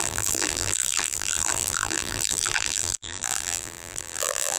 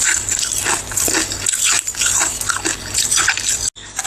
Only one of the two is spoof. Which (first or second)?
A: first